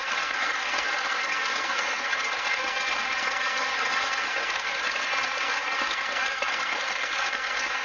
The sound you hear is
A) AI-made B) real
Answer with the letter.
A